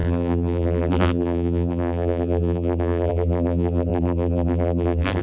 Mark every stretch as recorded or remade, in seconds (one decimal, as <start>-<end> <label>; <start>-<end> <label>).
0.0-5.2 remade